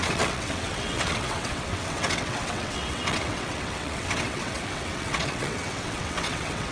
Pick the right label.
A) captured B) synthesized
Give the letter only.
B